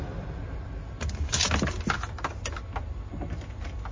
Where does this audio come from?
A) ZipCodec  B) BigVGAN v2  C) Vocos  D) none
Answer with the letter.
D